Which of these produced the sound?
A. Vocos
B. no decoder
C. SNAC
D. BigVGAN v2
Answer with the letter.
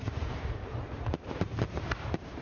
D